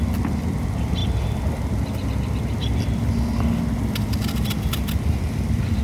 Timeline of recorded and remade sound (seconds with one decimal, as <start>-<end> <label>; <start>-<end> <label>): 0.0-5.8 recorded